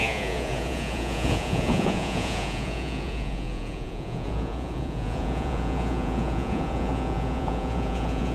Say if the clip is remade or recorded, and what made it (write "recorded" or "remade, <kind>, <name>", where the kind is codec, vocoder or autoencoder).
remade, vocoder, Vocos